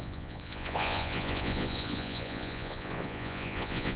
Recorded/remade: remade